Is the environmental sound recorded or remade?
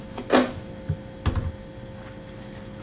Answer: recorded